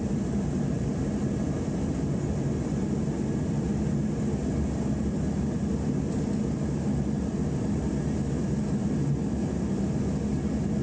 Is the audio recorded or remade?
recorded